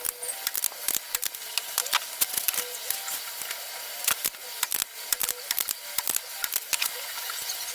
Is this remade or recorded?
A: recorded